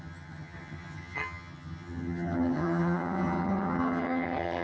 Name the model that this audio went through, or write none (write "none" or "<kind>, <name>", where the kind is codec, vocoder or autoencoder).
vocoder, HiFi-GAN